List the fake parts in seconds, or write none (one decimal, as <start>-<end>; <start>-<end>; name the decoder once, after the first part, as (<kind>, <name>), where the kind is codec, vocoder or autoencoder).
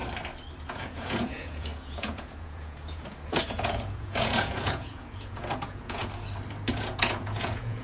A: 0.6-6.0 (vocoder, Vocos); 6.7-7.8